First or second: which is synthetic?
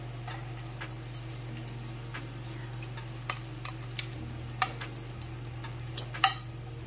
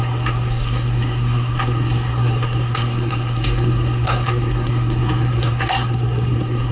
second